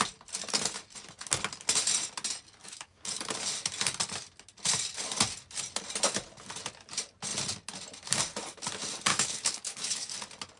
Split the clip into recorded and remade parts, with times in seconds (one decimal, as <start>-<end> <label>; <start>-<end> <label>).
0.0-2.6 recorded; 2.6-3.2 remade; 3.2-9.1 recorded; 9.1-10.1 remade; 10.1-10.6 recorded